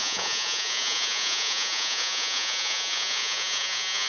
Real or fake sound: fake